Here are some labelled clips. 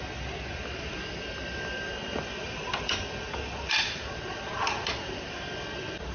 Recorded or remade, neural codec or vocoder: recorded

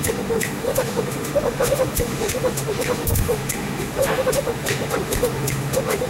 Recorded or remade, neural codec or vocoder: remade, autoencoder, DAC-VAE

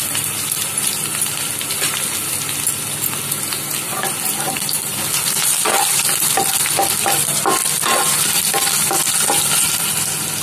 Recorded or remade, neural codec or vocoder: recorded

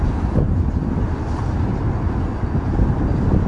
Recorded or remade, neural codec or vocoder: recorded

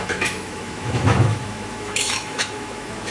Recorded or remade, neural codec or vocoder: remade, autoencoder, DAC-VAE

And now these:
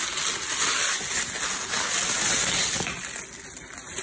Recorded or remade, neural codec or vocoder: recorded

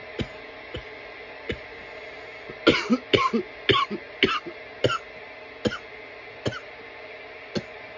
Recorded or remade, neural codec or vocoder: recorded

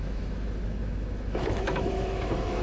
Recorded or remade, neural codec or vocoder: remade, autoencoder, DAC-VAE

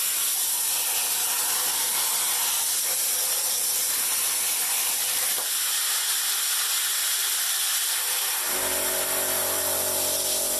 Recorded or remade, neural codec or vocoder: recorded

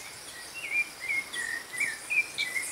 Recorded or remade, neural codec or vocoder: recorded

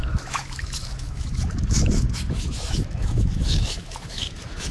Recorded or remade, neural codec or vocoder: remade, autoencoder, DAC-VAE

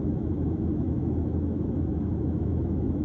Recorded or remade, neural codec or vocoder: remade, autoencoder, DAC-VAE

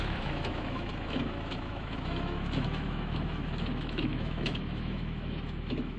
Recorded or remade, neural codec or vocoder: remade, autoencoder, DAC-VAE